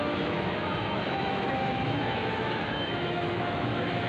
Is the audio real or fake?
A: fake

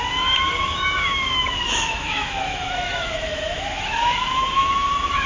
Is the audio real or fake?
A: fake